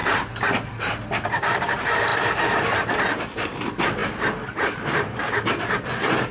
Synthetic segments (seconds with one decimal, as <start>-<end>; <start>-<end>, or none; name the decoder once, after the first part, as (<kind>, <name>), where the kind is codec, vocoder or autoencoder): none